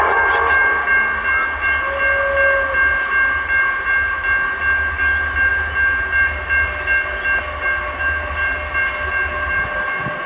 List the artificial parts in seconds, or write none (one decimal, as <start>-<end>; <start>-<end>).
none